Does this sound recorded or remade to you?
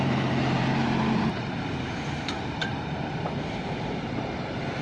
remade